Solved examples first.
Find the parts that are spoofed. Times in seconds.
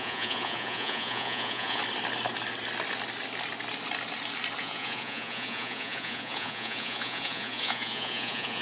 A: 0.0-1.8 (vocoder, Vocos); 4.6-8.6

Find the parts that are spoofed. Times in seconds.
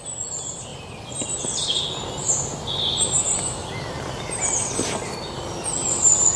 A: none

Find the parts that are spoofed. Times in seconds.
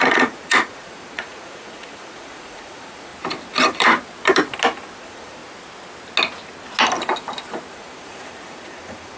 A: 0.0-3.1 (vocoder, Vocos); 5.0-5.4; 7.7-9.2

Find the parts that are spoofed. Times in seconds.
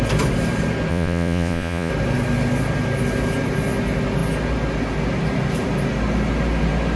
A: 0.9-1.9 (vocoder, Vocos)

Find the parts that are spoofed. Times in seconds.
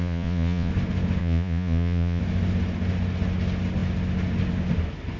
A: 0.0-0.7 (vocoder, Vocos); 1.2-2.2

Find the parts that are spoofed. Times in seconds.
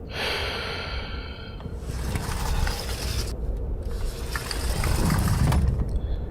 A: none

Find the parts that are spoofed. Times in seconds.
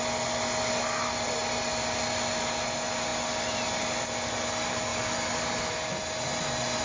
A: none